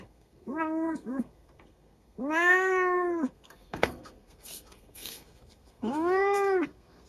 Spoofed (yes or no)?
yes